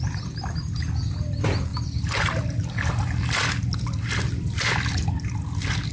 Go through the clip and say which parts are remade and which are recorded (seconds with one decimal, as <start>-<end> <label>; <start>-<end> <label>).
0.0-5.9 recorded